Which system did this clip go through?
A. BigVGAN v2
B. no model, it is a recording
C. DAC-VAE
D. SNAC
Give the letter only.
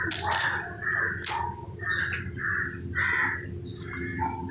B